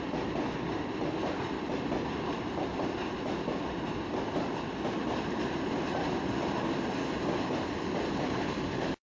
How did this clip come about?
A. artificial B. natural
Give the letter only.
B